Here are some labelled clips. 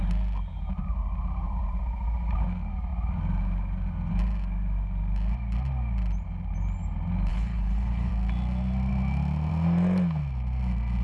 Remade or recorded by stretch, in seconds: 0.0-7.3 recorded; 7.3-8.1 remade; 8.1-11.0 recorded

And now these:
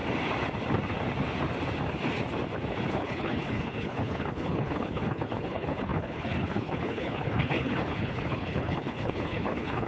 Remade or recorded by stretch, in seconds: 0.0-2.9 recorded; 2.9-9.9 remade